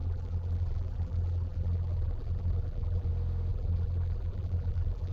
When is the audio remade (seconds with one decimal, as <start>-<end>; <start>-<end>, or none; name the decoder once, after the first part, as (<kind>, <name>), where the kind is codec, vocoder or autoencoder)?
0.0-3.1 (vocoder, BigVGAN v2); 3.5-5.1